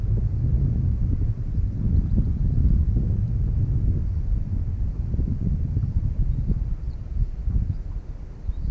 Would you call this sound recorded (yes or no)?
yes